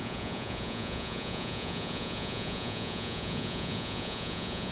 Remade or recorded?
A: remade